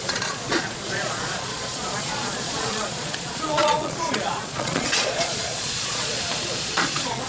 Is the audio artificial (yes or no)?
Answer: yes